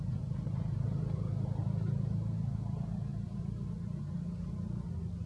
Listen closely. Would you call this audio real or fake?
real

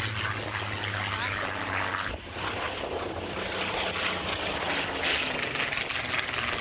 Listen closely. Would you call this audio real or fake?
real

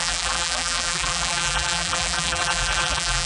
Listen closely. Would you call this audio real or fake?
fake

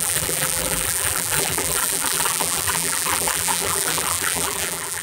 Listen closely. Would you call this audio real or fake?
fake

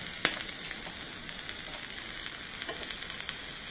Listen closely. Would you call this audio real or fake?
real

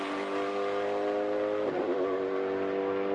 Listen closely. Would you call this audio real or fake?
real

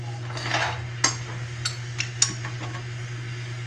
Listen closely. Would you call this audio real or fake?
real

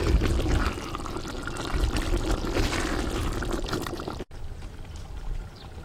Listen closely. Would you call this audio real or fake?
real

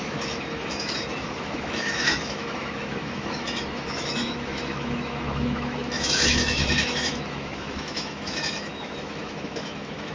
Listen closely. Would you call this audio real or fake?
fake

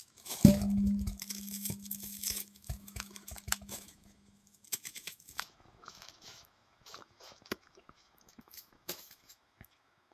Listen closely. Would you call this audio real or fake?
fake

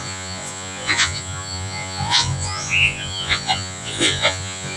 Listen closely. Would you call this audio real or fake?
fake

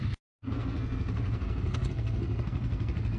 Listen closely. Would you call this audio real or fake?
fake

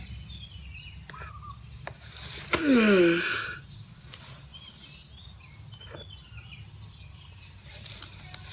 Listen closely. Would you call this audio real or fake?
real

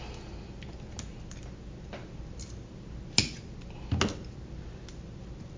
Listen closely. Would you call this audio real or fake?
real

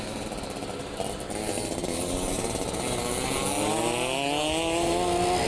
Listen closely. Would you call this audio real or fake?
real